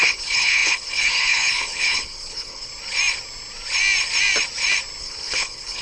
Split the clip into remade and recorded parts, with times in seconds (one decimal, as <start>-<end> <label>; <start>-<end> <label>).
0.0-2.7 remade; 2.7-5.0 recorded; 5.0-5.8 remade